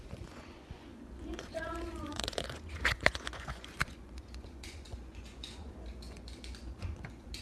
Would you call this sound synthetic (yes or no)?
yes